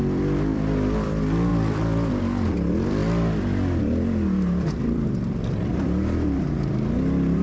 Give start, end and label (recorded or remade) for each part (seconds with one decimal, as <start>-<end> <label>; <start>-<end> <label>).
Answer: 0.0-3.0 remade; 3.0-3.8 recorded; 3.8-7.4 remade